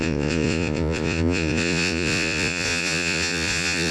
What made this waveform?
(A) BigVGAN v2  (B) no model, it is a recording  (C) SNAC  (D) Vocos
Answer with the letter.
D